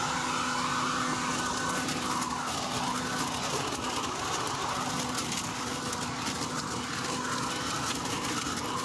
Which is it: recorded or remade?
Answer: recorded